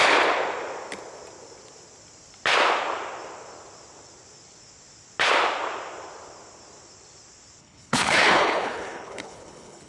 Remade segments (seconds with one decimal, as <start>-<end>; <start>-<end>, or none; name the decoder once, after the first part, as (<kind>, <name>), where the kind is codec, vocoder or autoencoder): 7.6-9.9 (codec, HILCodec)